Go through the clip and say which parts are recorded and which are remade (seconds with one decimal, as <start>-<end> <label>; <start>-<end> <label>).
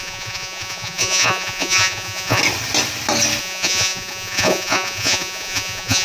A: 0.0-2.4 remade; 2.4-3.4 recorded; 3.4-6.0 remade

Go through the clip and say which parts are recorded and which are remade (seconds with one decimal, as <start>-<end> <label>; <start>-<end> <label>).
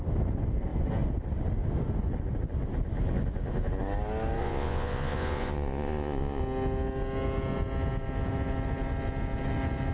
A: 0.0-4.4 recorded; 4.4-6.4 remade; 6.4-9.9 recorded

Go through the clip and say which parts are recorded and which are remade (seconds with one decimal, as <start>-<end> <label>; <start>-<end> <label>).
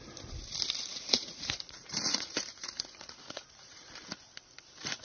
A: 0.0-0.9 recorded; 0.9-3.9 remade; 3.9-5.0 recorded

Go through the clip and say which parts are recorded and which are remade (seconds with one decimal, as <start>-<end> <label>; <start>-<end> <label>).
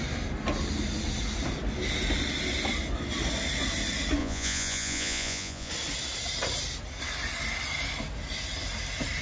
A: 0.0-4.2 recorded; 4.2-5.7 remade; 5.7-9.2 recorded